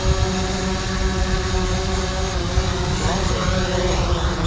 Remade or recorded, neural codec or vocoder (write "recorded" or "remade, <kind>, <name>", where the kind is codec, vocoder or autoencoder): recorded